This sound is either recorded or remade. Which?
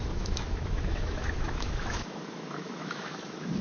remade